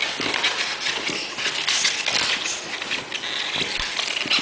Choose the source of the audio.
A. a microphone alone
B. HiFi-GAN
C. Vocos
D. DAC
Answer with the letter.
A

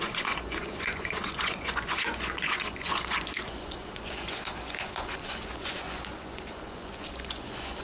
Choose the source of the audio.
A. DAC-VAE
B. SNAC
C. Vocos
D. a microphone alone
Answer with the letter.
C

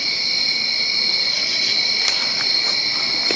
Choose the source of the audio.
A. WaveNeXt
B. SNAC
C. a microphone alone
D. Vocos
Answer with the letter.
C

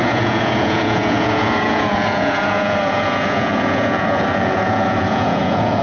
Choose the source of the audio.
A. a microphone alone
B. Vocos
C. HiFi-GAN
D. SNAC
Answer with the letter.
B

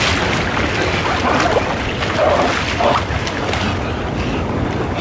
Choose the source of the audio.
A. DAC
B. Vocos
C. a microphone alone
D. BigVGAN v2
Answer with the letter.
C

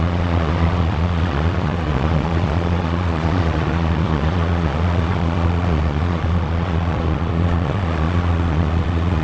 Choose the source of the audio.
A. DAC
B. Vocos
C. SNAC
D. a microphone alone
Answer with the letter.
B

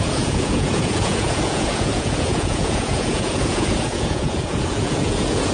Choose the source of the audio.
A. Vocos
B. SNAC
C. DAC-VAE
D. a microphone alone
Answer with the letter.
A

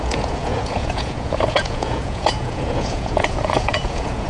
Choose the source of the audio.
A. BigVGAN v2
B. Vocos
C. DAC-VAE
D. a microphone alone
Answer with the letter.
B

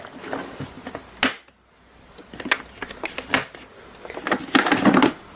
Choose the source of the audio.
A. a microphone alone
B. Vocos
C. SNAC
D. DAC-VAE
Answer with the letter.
A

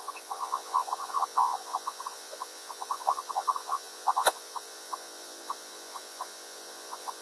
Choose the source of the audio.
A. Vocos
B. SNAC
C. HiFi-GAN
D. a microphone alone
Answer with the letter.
A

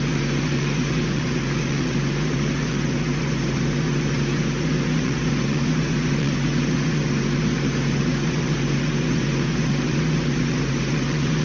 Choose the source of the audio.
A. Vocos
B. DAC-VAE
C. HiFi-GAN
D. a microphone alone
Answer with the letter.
A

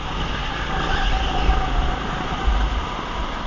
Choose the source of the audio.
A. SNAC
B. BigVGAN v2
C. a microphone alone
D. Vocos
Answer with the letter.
C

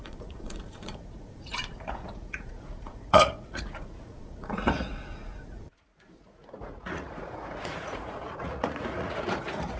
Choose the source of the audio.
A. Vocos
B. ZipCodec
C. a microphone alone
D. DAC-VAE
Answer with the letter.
A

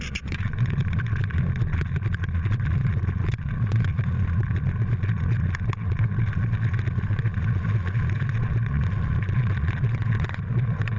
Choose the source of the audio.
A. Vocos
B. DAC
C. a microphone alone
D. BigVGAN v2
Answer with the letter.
A